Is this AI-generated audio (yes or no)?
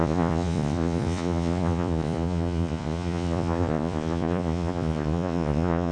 yes